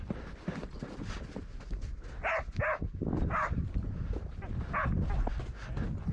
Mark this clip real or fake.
real